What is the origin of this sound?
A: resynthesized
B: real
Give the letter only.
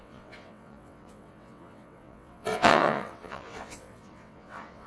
A